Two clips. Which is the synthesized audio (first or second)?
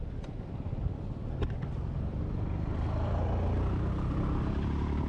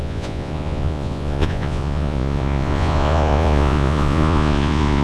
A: second